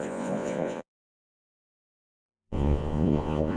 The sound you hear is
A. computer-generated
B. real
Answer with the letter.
A